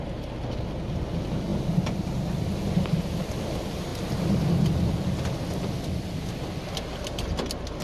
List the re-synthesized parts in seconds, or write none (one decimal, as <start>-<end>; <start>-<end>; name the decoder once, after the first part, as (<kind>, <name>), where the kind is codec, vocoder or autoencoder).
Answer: none